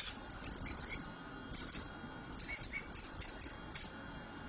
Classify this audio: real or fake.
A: real